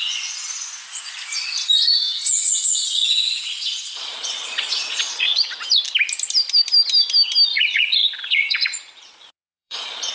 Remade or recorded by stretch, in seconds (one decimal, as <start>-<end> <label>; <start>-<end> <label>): 0.0-2.4 recorded; 2.4-5.5 remade; 5.5-7.5 recorded; 7.5-10.1 remade